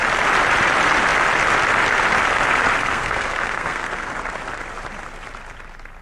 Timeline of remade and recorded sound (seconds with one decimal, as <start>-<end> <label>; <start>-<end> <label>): 0.0-2.8 recorded; 2.8-4.1 remade; 4.1-6.0 recorded

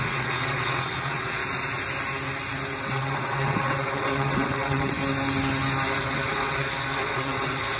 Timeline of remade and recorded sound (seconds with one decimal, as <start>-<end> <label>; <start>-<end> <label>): 0.0-1.4 remade; 1.4-2.8 recorded; 2.8-5.0 remade; 5.0-6.0 recorded; 6.0-7.8 remade

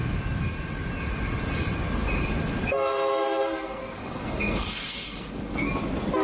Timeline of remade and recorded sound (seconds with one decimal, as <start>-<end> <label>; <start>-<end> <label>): 0.0-2.6 recorded; 2.6-5.7 remade; 5.7-6.2 recorded

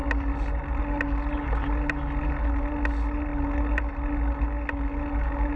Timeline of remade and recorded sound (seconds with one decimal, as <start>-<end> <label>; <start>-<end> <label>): 0.0-5.6 recorded